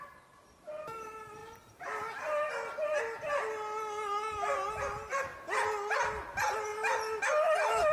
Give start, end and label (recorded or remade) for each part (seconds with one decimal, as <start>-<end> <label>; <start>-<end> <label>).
0.0-7.9 recorded

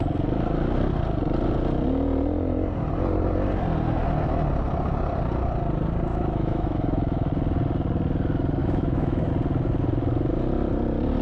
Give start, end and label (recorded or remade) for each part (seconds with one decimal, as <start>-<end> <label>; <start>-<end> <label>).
0.0-6.1 recorded; 6.1-7.3 remade; 7.3-8.6 recorded; 8.6-9.3 remade; 9.3-11.2 recorded